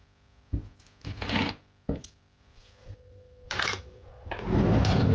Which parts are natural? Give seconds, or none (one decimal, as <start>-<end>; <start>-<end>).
0.0-1.6; 4.3-5.1